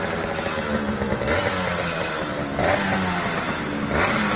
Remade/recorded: recorded